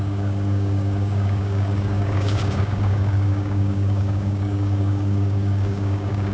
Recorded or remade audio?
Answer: remade